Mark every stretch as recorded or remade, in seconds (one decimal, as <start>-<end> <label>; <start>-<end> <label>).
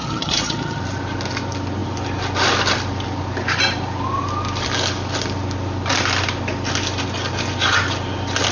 0.0-0.8 remade; 0.8-8.5 recorded